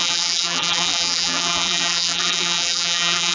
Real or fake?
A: fake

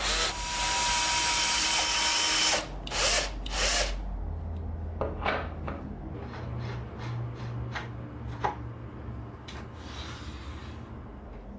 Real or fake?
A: real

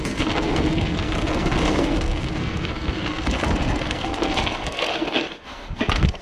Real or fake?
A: fake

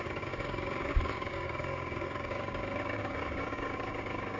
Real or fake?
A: fake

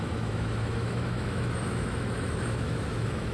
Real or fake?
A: fake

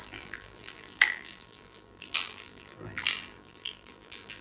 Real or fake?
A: fake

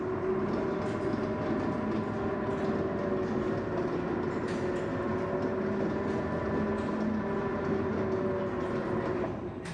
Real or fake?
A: real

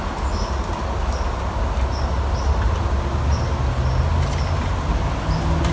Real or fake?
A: real